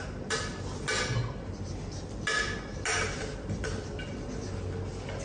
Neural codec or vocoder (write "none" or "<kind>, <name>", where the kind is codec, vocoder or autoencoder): none